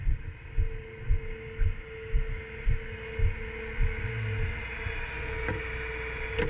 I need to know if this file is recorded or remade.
recorded